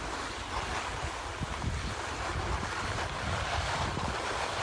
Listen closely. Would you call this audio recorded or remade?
recorded